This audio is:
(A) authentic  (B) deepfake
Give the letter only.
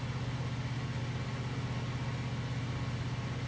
A